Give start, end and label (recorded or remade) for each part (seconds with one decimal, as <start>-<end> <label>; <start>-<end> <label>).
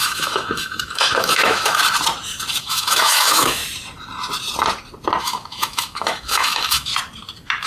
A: 0.0-1.8 remade; 1.8-2.6 recorded; 2.6-3.6 remade; 3.6-5.2 recorded; 5.2-6.9 remade; 6.9-7.7 recorded